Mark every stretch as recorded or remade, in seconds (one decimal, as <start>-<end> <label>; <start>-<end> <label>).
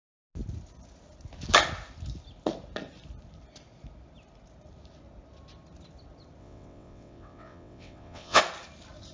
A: 0.0-6.4 recorded; 6.4-8.4 remade; 8.4-9.1 recorded